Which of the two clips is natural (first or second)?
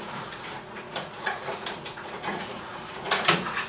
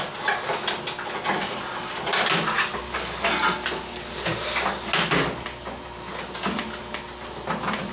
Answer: second